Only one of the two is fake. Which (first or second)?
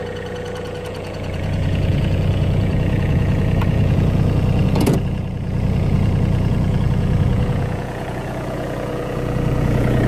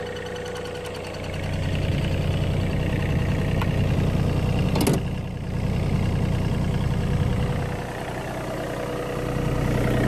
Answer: first